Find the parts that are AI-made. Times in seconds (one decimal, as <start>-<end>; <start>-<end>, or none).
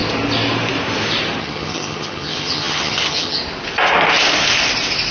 1.4-3.4